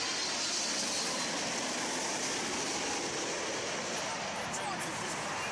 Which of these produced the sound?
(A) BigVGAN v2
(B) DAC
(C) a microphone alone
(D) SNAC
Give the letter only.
C